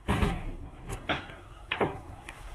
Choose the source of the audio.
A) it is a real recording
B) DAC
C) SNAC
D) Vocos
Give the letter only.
C